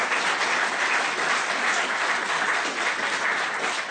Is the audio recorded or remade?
recorded